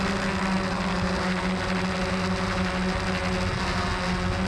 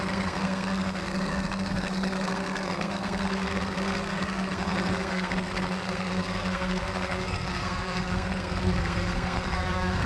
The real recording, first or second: first